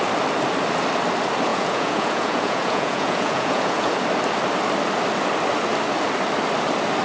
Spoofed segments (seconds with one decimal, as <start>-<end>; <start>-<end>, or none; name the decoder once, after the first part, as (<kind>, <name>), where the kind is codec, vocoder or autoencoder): 1.5-4.0 (vocoder, Vocos)